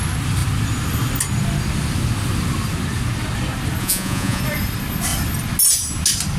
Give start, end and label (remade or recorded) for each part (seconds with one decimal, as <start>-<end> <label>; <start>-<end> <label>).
0.0-3.8 recorded; 3.8-4.4 remade; 4.4-6.4 recorded